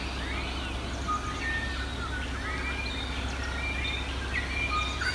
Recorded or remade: recorded